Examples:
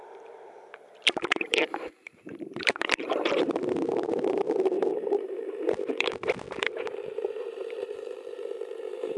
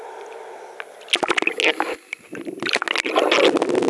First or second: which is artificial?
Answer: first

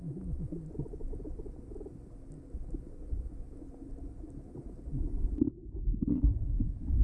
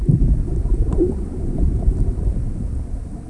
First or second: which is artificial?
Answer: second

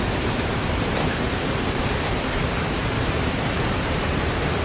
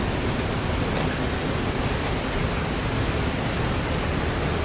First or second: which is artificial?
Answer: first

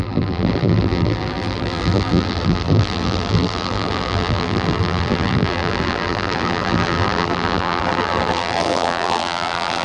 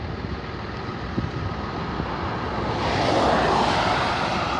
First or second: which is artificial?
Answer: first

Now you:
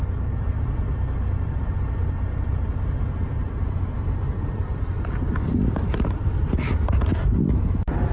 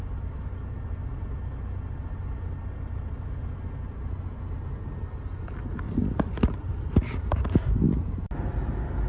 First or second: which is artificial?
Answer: first